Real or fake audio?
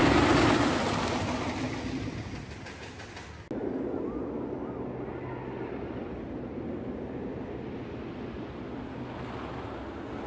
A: real